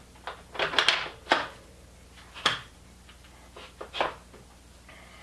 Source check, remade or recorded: recorded